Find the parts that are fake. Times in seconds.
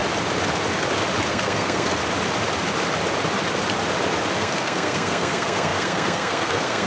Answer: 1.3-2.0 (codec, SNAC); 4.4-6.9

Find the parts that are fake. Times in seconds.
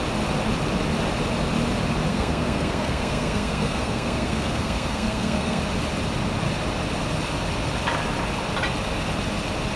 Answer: 2.1-5.6 (codec, SNAC)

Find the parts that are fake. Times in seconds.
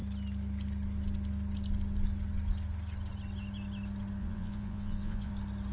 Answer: 4.2-5.3 (vocoder, Vocos)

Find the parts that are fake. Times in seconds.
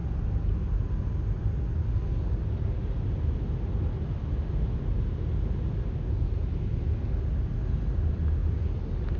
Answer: none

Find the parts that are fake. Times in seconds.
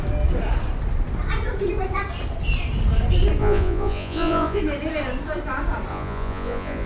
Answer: 3.4-4.6 (vocoder, Vocos); 5.9-6.9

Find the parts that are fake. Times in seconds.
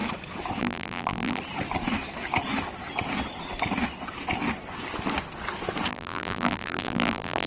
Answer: 0.6-1.4 (vocoder, BigVGAN v2); 5.9-7.5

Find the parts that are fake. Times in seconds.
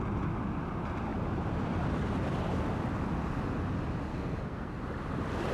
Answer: 4.1-4.8 (codec, SNAC)